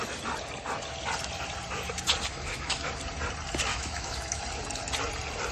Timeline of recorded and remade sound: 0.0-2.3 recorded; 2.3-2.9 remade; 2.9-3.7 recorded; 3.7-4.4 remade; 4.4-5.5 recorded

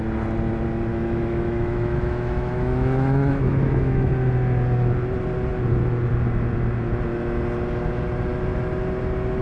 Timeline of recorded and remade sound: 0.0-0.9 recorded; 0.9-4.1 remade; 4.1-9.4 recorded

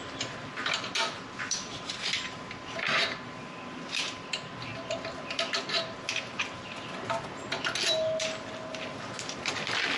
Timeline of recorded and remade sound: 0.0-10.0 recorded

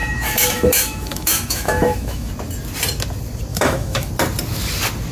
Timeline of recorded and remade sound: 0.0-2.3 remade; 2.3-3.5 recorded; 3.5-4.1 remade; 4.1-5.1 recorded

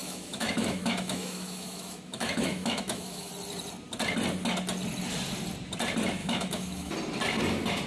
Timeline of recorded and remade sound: 0.0-3.3 remade; 3.3-6.2 recorded; 6.2-6.9 remade; 6.9-7.9 recorded

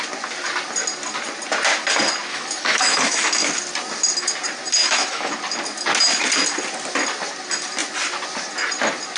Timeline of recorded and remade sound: 0.0-2.3 recorded; 2.3-3.5 remade; 3.5-4.8 recorded; 4.8-5.3 remade; 5.3-9.2 recorded